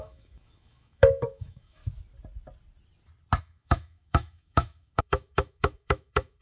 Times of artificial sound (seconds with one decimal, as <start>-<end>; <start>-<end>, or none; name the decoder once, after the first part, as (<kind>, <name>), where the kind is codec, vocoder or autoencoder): 0.0-1.8 (autoencoder, DAC-VAE); 3.4-6.4